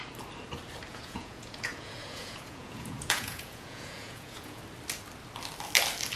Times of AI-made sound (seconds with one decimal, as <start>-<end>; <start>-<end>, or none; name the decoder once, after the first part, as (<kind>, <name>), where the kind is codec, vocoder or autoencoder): 0.9-4.6 (vocoder, Vocos)